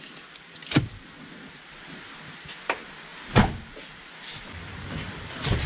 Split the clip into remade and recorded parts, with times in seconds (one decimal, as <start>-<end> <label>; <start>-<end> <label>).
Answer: 0.0-5.7 recorded